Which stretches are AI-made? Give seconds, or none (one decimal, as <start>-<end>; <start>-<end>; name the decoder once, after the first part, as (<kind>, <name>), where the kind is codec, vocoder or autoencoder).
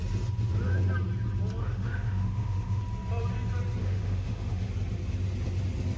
1.6-2.8 (autoencoder, DAC-VAE); 3.8-4.7